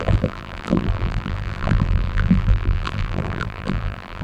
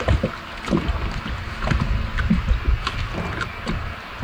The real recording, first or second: second